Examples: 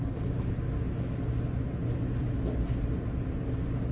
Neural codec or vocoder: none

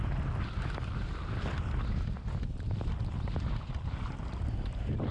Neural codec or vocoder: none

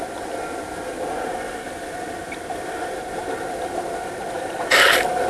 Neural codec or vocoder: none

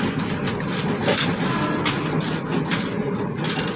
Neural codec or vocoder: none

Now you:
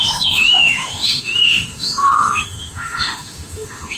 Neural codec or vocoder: autoencoder, DAC-VAE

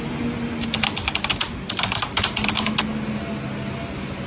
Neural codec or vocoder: none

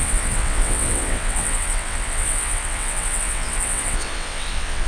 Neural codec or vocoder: vocoder, WaveNeXt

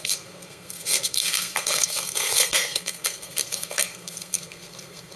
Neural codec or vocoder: codec, SNAC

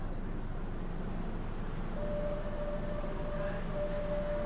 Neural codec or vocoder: none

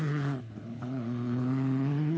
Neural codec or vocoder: codec, HILCodec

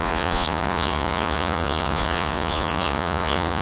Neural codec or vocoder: vocoder, Vocos